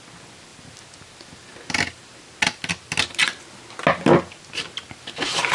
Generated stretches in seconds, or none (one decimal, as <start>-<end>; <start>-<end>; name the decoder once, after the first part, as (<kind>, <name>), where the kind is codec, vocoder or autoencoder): none